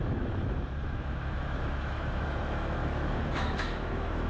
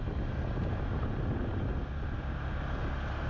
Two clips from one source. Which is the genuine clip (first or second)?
second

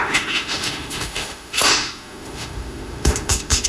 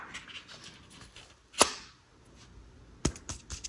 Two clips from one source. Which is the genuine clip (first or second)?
second